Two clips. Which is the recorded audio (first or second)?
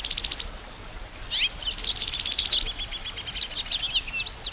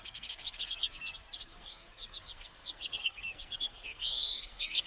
first